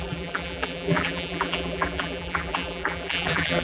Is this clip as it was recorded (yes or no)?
no